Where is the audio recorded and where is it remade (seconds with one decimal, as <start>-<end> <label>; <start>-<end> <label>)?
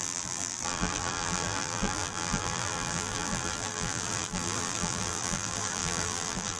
0.0-6.6 remade